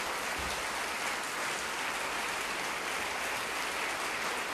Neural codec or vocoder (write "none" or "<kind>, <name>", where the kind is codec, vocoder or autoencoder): none